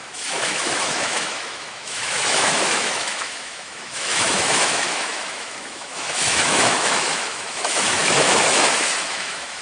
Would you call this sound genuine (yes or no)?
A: no